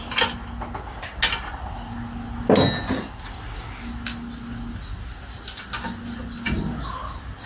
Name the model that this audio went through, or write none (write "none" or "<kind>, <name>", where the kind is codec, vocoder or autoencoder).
none